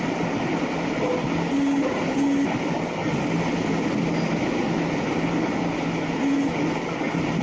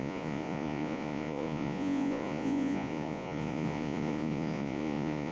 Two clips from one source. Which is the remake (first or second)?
second